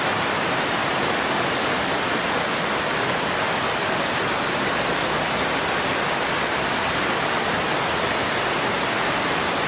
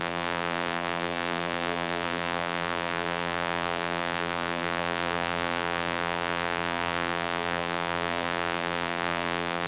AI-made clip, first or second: second